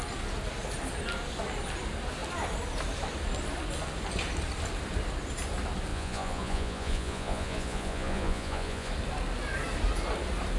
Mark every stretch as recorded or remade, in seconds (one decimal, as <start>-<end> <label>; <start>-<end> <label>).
0.0-5.9 recorded; 5.9-8.9 remade; 8.9-10.6 recorded